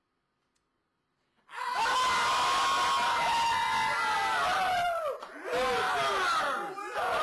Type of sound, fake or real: real